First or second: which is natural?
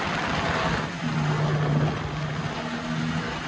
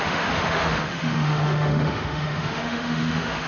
first